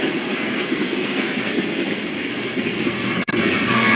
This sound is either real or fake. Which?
fake